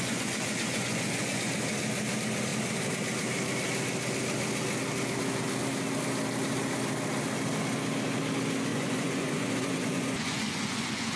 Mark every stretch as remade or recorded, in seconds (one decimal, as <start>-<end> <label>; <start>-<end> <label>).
0.0-1.5 remade; 1.5-8.7 recorded; 8.7-11.2 remade